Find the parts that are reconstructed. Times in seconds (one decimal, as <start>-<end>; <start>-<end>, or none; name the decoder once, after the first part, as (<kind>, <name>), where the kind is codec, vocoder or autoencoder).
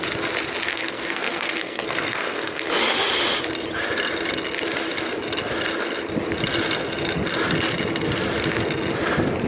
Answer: 0.7-2.7 (codec, SNAC)